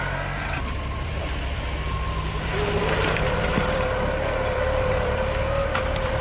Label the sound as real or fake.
fake